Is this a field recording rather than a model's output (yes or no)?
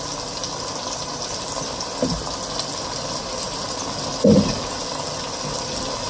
yes